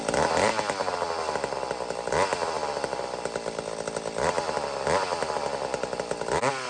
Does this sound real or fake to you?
real